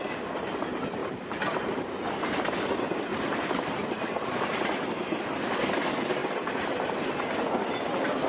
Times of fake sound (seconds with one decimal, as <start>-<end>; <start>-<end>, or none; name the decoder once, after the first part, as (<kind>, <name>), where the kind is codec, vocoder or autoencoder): 1.0-2.7 (vocoder, BigVGAN v2); 6.2-7.1